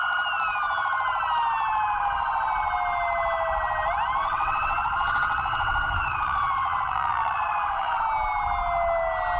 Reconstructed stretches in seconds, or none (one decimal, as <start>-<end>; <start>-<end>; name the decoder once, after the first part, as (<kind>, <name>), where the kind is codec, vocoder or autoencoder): 4.2-8.0 (vocoder, WaveNeXt)